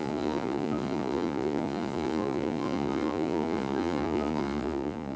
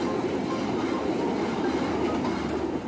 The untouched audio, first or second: second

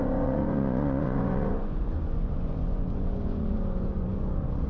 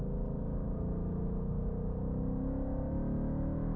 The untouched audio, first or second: second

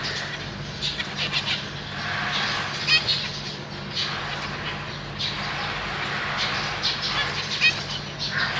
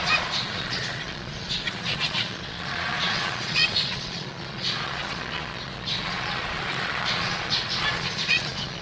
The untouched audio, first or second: first